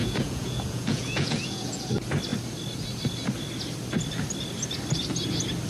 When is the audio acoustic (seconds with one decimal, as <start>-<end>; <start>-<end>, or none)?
1.9-5.7